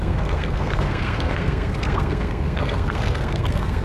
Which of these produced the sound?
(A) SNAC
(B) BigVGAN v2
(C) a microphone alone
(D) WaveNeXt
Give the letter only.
A